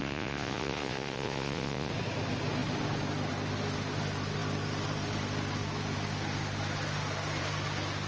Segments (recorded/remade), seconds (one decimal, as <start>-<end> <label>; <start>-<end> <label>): 0.0-1.9 remade; 1.9-8.1 recorded